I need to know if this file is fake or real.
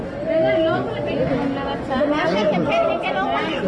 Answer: real